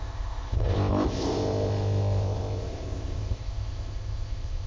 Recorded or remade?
remade